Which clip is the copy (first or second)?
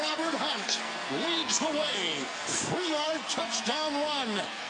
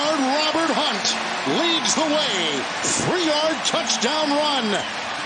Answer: first